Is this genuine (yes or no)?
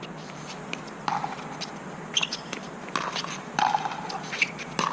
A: yes